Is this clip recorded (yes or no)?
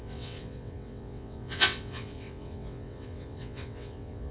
no